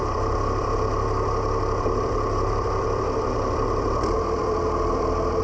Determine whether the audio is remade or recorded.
remade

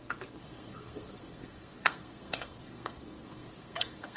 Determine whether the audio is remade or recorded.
remade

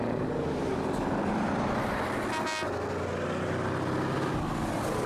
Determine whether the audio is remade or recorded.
recorded